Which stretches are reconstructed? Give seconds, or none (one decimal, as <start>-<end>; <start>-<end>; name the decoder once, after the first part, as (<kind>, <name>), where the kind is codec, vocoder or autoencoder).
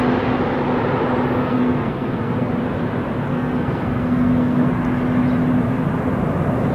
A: 1.4-2.5 (codec, SNAC); 3.3-4.7